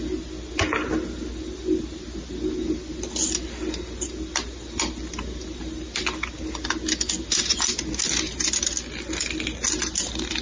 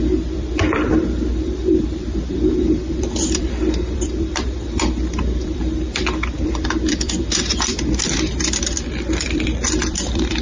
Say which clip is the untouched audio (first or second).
first